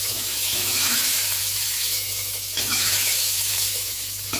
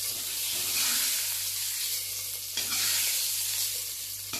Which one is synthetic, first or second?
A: first